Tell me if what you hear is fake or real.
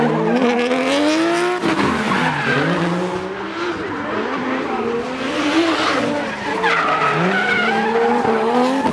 real